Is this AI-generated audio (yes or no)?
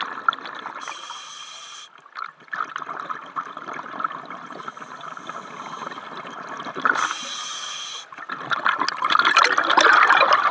no